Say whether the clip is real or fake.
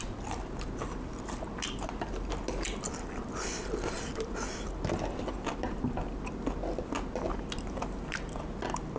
real